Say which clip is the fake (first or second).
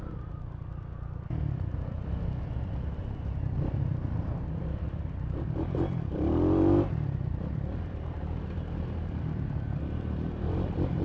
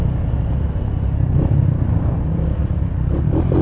first